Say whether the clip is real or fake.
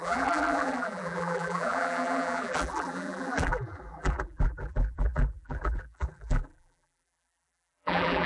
fake